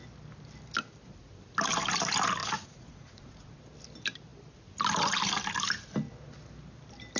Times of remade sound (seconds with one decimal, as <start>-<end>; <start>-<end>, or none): 2.4-3.6